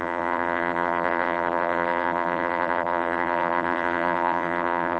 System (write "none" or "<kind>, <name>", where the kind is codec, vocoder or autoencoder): vocoder, BigVGAN v2